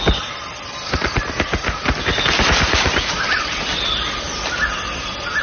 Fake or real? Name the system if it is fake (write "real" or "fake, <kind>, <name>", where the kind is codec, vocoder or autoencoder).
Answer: real